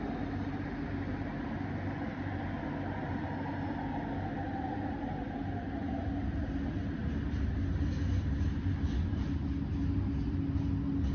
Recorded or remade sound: recorded